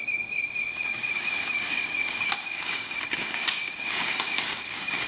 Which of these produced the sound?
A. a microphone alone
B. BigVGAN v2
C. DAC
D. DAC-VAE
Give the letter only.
C